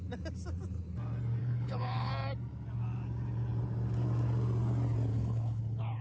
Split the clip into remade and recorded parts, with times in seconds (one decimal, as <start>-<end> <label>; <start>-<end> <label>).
0.0-1.4 recorded; 1.4-2.1 remade; 2.1-5.1 recorded; 5.1-6.0 remade